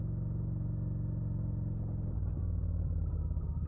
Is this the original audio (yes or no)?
yes